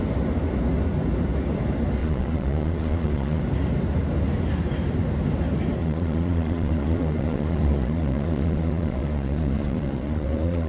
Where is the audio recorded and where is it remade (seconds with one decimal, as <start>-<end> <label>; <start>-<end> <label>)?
0.0-2.0 recorded; 2.0-3.4 remade; 3.4-5.8 recorded; 5.8-10.7 remade